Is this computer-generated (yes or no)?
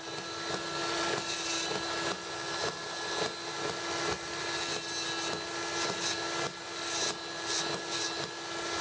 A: no